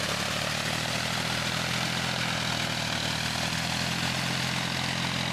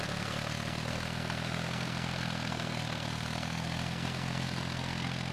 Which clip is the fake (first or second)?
second